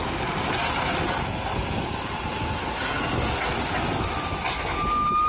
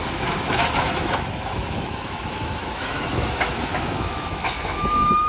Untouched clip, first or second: first